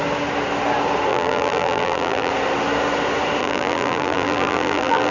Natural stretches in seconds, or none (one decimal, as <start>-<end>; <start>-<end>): 0.0-1.1; 2.3-3.4